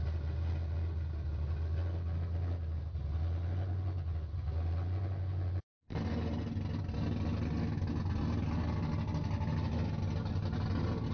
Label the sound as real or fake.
real